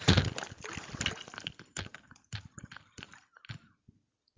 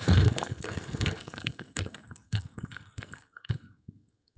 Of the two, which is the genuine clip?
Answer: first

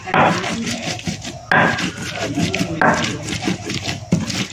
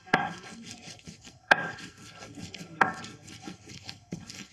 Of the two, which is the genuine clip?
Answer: first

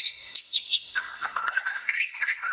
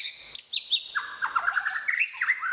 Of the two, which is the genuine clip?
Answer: second